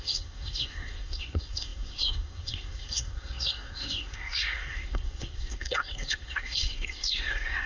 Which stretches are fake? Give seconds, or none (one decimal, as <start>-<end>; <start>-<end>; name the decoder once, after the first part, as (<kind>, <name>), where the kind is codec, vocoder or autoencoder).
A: 0.0-7.7 (codec, SNAC)